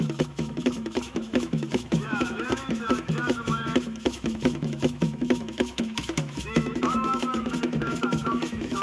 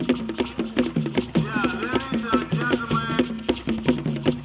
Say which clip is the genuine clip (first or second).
second